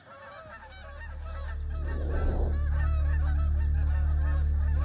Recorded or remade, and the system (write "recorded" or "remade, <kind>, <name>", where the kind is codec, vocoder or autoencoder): recorded